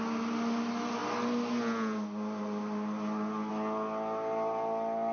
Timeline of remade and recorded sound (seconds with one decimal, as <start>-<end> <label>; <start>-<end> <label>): 0.0-5.1 recorded